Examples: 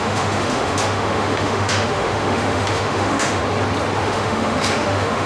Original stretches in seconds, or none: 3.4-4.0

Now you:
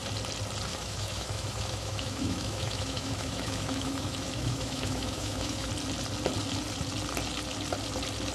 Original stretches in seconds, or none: 0.0-0.7; 5.7-8.3

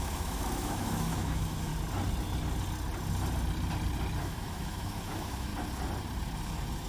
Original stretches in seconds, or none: 1.7-4.2; 5.5-6.9

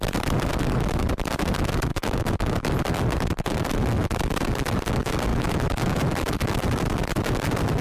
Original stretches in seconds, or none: 0.0-1.9; 2.7-5.3; 6.0-7.8

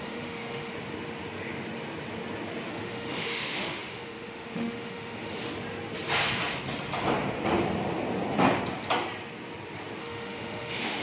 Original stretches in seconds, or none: 0.7-2.7; 5.5-10.0

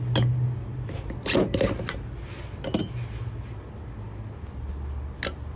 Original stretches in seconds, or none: 0.0-5.6

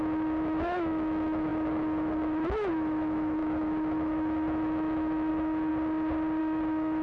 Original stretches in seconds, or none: 5.7-6.4